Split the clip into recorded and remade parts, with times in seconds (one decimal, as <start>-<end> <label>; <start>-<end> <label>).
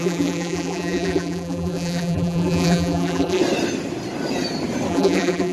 0.0-3.4 remade; 3.4-4.9 recorded; 4.9-5.5 remade